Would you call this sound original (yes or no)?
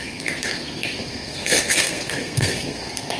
no